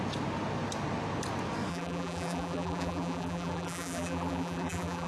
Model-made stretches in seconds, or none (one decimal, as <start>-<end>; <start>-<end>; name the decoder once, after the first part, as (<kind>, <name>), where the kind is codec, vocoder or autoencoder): 1.7-5.1 (vocoder, BigVGAN v2)